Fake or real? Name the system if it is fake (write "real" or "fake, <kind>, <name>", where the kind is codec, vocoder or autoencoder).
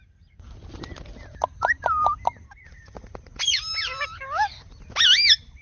real